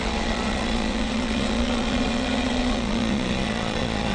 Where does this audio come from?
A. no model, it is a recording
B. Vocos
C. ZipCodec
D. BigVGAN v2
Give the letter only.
B